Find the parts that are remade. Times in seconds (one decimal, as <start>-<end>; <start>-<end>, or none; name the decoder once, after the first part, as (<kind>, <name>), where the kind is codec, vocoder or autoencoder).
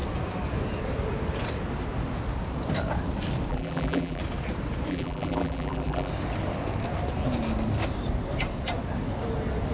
3.5-4.2 (vocoder, BigVGAN v2); 4.9-6.1